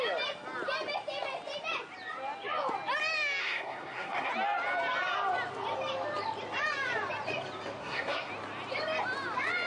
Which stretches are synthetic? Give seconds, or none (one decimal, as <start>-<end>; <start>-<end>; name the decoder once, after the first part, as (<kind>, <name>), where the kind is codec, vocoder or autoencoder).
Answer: 3.4-4.3 (codec, SNAC); 7.8-8.3